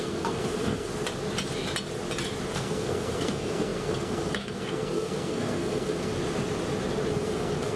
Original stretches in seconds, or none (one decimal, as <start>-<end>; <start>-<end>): 0.9-2.5; 6.1-7.1